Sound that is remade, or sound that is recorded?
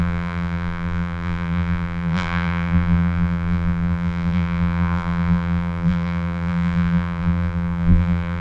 remade